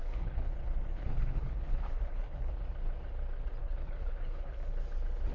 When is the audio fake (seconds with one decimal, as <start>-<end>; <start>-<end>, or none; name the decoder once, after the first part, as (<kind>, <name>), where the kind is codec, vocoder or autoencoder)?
0.0-0.5 (codec, HILCodec); 1.0-2.5; 3.6-4.8